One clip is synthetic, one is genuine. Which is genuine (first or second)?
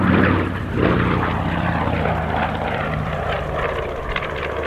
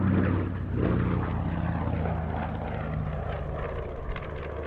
second